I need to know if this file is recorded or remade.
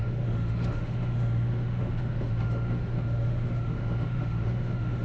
remade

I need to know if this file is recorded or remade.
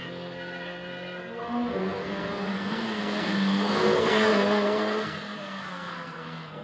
remade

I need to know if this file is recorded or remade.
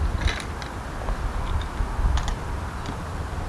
recorded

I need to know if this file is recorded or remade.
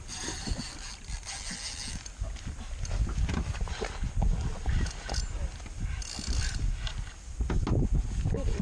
recorded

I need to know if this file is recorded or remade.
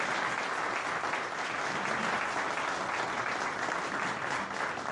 recorded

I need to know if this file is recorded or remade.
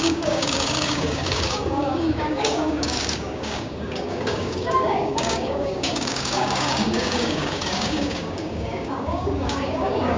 remade